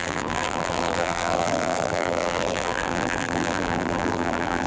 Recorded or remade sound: remade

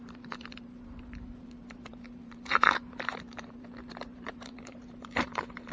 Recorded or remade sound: remade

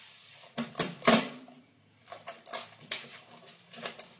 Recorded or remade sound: remade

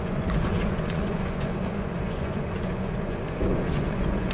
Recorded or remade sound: remade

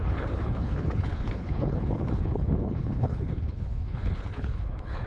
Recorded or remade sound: remade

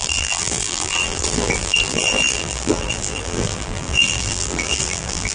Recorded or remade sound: remade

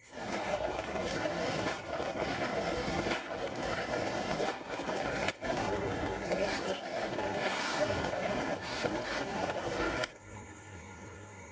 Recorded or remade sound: remade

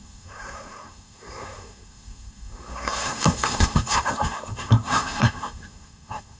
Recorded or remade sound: remade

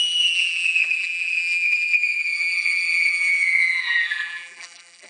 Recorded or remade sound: remade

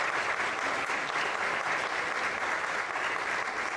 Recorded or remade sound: recorded